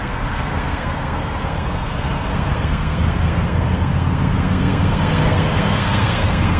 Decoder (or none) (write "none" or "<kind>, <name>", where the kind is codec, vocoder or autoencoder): codec, SNAC